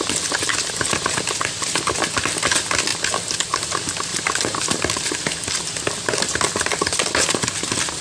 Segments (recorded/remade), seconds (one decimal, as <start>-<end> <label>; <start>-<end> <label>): 0.0-4.1 recorded; 4.1-5.1 remade; 5.1-8.0 recorded